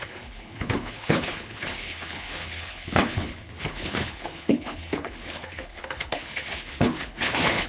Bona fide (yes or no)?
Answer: no